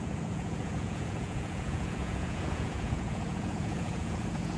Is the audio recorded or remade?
remade